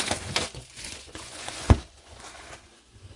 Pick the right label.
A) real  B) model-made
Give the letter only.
B